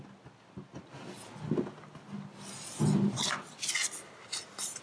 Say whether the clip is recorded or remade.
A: recorded